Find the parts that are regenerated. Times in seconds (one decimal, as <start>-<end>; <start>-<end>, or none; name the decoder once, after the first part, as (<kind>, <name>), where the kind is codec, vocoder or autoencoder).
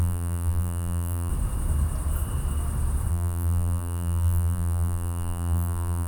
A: 0.0-1.3 (vocoder, BigVGAN v2); 3.1-6.1